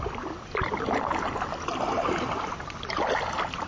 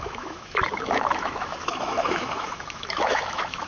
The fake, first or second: second